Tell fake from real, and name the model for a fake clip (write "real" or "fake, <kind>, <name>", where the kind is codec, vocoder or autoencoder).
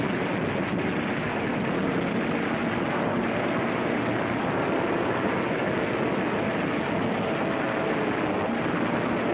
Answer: real